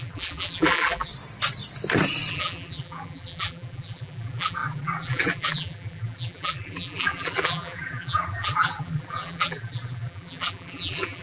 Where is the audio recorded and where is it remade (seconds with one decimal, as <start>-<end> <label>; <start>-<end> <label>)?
0.0-1.1 remade; 1.1-2.3 recorded; 2.3-11.2 remade